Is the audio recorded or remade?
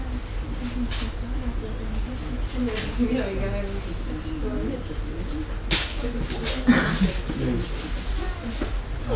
recorded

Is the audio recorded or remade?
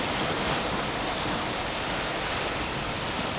remade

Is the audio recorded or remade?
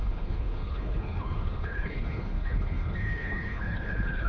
remade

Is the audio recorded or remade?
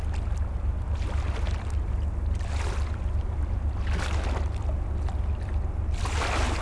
recorded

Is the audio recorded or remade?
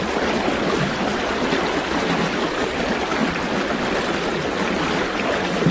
recorded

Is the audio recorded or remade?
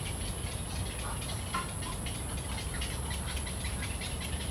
recorded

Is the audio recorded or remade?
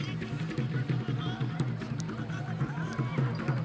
recorded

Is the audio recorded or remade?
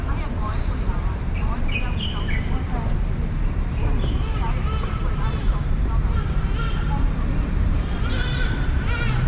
remade